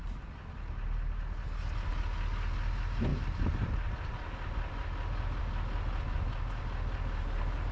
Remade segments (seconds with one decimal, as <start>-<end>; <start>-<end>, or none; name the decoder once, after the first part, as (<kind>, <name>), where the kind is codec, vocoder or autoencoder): none